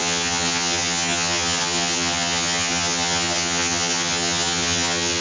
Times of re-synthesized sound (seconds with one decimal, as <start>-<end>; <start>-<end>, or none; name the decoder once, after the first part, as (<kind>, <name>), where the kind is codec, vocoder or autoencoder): 0.0-5.2 (vocoder, HiFi-GAN)